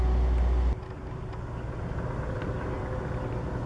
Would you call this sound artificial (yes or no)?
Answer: no